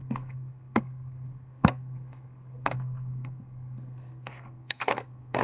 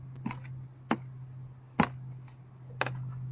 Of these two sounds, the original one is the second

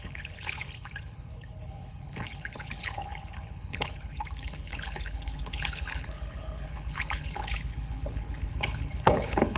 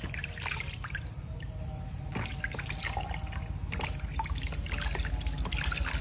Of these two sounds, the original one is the second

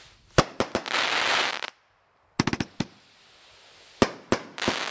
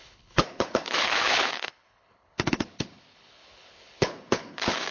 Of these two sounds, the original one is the first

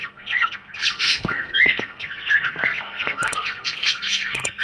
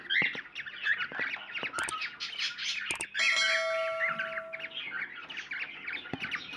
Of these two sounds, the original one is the second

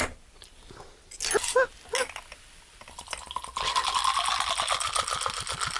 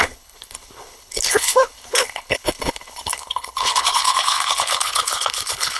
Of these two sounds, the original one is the first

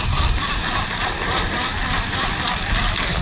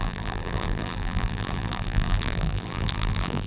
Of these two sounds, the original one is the first